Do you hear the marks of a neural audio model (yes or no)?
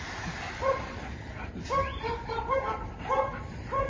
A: yes